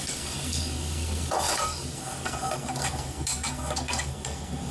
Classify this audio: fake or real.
fake